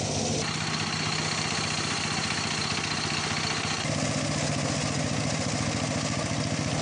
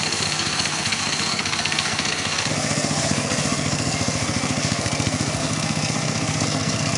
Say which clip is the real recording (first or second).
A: first